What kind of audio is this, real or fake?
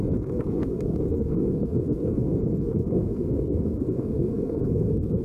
fake